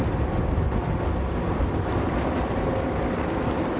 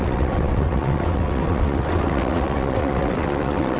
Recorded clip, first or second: first